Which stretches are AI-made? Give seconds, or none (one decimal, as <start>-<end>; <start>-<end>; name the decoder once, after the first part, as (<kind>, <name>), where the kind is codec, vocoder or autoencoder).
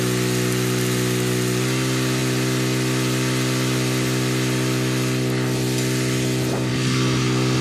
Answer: none